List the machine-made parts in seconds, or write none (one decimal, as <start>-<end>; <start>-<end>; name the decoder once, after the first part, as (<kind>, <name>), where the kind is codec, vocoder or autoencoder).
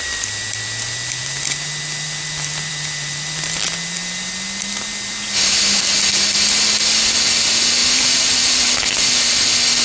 7.8-8.6 (vocoder, BigVGAN v2)